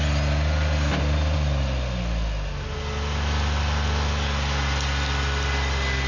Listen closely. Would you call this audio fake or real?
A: real